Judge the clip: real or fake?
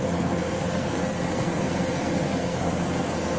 fake